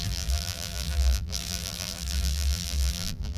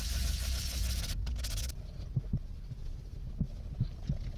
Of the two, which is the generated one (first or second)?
first